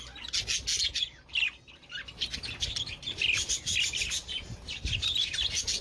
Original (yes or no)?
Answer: yes